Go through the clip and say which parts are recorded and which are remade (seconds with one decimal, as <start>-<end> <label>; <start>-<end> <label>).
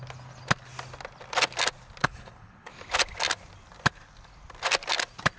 0.0-2.0 recorded; 2.0-2.7 remade; 2.7-5.4 recorded